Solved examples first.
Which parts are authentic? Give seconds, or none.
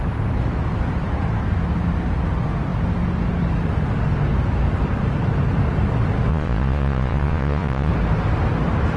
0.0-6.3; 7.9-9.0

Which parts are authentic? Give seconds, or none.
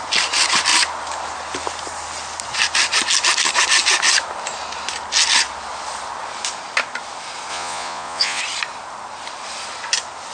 0.0-7.5; 8.4-10.3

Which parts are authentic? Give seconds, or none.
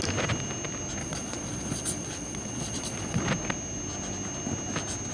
0.0-1.0; 3.2-5.1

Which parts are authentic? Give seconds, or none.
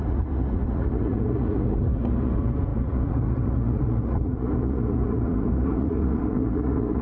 none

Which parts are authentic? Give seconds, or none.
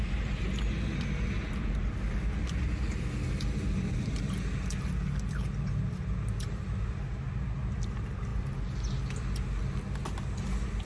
0.0-10.9